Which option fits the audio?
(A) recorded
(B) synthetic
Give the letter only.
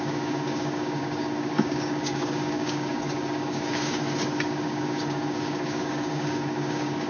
B